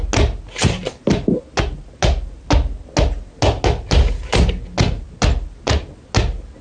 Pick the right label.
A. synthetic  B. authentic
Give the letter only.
B